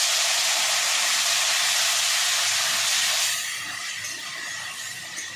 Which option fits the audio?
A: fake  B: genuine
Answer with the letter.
B